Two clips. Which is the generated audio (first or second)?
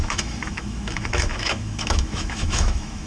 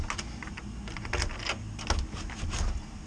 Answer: first